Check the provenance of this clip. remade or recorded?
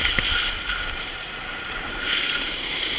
remade